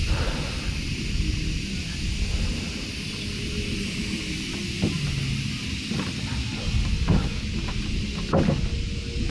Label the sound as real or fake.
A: real